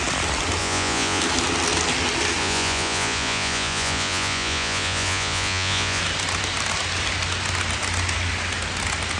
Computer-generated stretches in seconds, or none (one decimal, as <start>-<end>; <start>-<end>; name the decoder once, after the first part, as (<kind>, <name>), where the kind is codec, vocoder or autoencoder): 0.6-1.2 (vocoder, Vocos); 2.4-6.0